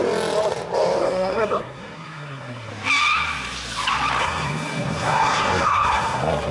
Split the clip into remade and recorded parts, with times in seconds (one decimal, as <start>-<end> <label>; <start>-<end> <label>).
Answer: 0.0-1.0 recorded; 1.0-2.7 remade; 2.7-4.2 recorded; 4.2-6.5 remade

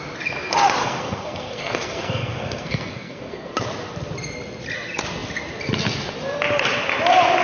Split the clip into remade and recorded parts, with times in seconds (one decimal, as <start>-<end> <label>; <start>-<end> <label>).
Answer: 0.0-0.8 recorded; 0.8-3.5 remade; 3.5-7.4 recorded

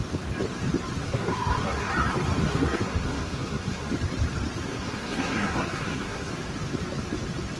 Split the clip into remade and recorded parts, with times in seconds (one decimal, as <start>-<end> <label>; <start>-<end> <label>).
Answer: 0.0-1.0 recorded; 1.0-1.9 remade; 1.9-2.4 recorded; 2.4-3.9 remade; 3.9-4.7 recorded; 4.7-6.3 remade; 6.3-7.6 recorded

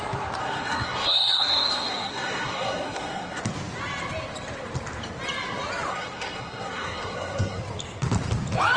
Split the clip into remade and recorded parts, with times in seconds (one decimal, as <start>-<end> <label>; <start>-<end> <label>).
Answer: 0.0-0.4 recorded; 0.4-3.4 remade; 3.4-5.9 recorded; 5.9-7.6 remade; 7.6-8.8 recorded

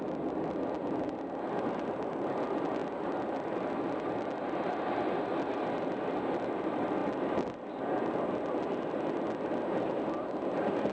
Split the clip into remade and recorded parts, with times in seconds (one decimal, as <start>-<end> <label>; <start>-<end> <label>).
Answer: 0.0-10.9 recorded

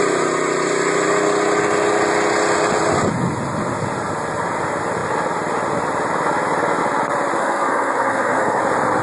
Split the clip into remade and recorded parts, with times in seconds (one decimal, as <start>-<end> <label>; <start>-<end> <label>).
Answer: 0.0-7.4 recorded; 7.4-8.6 remade; 8.6-9.0 recorded